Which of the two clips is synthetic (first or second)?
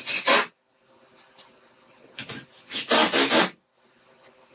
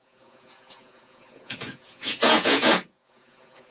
second